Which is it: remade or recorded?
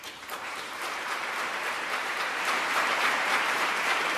remade